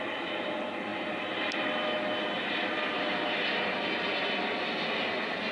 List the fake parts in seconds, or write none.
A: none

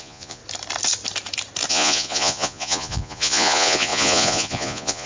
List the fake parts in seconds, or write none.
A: 0.0-0.4 (vocoder, Vocos); 1.7-5.1

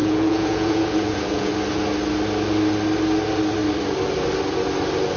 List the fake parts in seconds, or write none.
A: 0.0-1.5 (vocoder, Vocos)

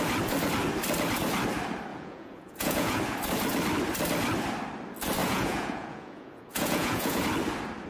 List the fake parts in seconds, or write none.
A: 1.9-3.0 (vocoder, Vocos); 5.2-7.2

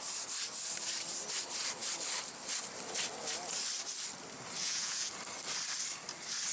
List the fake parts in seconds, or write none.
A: 4.6-5.1 (vocoder, Vocos)

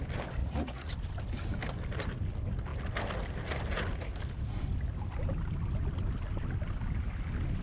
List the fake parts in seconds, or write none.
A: 0.4-0.9 (vocoder, Vocos)

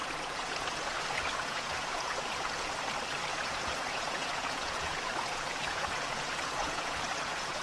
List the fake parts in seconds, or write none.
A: 0.0-2.7 (vocoder, Vocos); 3.3-7.6